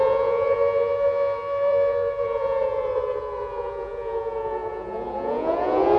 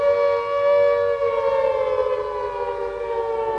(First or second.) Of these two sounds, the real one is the second